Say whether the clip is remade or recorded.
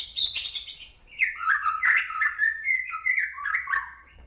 remade